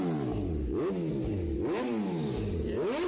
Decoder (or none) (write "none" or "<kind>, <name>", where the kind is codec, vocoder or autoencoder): none